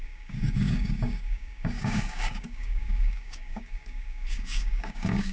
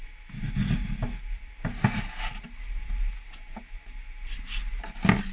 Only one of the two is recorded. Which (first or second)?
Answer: second